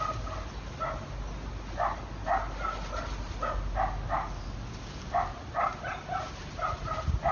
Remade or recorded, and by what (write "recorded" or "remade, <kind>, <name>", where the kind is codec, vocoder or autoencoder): recorded